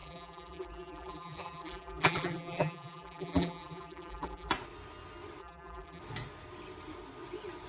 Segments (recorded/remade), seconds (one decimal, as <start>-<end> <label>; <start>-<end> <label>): 0.0-4.5 remade; 4.5-5.4 recorded; 5.4-6.0 remade; 6.0-7.7 recorded